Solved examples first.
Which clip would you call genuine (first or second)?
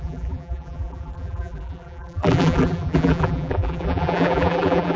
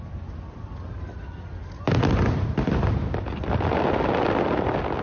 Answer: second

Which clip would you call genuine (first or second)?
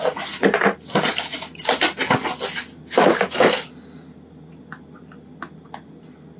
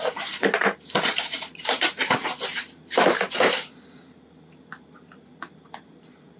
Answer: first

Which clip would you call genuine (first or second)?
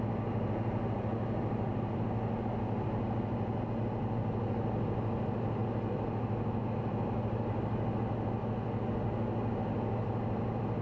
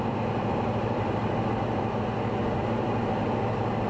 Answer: first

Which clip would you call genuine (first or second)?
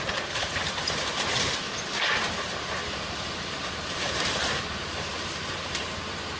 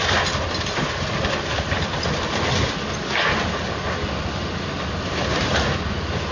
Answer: second